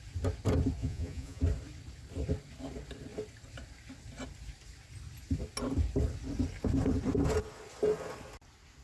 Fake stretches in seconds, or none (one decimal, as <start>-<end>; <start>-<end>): 0.8-1.4